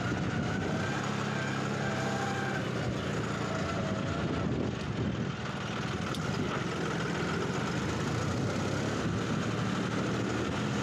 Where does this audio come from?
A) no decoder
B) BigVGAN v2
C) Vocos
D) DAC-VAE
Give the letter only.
A